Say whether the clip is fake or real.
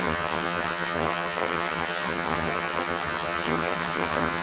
fake